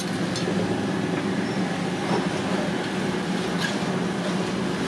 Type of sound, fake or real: real